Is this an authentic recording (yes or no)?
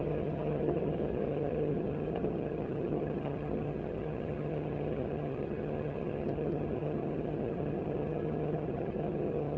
no